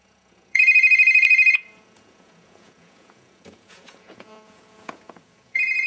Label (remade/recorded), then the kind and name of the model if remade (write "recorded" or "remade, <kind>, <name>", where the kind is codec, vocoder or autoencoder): remade, vocoder, Vocos